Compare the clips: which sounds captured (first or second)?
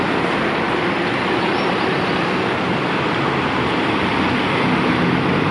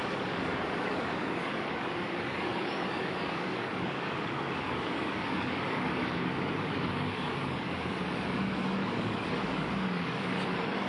first